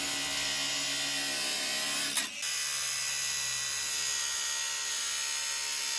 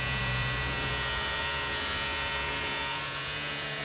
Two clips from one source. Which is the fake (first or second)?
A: second